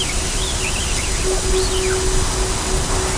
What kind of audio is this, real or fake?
real